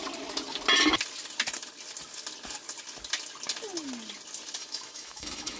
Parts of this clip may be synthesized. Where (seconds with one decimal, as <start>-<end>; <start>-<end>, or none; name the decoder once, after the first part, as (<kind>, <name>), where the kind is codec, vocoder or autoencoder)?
4.6-5.6 (autoencoder, DAC-VAE)